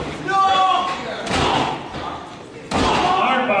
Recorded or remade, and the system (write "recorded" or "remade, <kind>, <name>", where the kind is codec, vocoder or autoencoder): recorded